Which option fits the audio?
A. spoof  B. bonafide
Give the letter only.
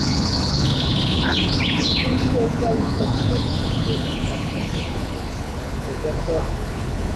A